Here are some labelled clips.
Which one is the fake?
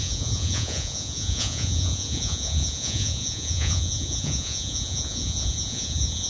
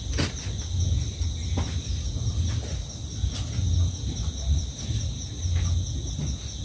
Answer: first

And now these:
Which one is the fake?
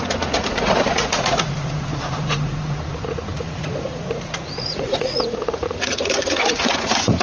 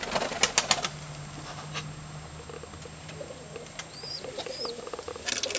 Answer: first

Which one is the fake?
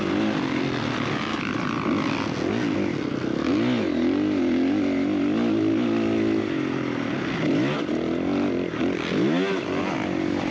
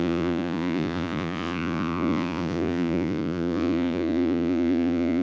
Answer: second